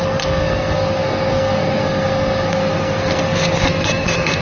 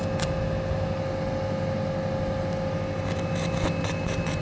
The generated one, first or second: first